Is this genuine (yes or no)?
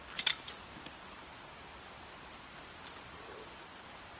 yes